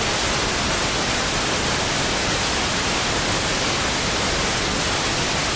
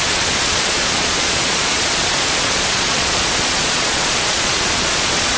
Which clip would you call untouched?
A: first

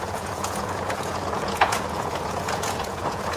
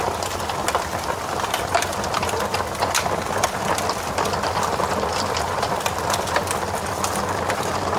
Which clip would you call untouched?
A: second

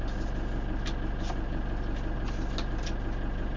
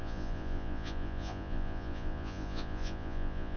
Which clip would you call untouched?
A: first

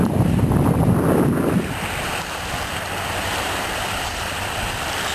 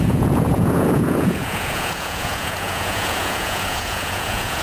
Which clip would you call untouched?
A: first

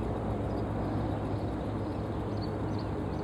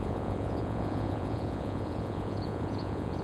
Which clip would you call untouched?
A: first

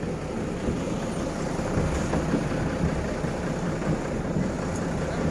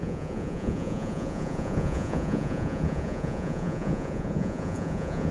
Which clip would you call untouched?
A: first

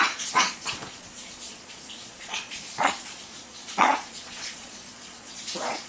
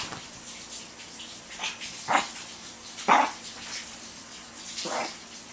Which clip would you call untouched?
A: second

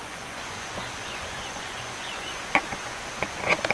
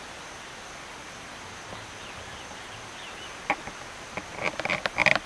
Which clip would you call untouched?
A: second